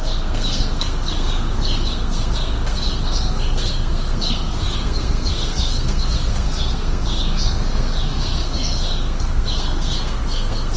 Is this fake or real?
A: fake